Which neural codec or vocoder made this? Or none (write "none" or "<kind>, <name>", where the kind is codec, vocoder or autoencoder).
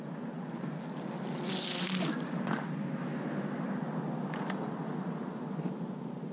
none